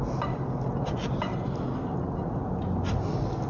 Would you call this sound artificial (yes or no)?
no